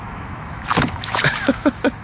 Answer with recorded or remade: remade